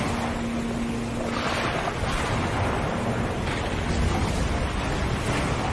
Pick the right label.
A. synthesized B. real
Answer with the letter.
B